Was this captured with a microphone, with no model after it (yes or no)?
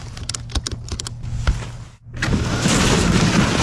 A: yes